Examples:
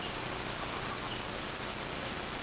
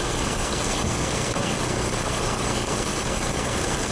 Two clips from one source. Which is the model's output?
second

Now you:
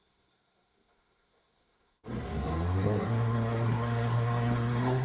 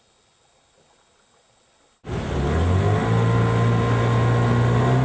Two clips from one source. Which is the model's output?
first